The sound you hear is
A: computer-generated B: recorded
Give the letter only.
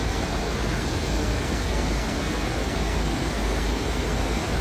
A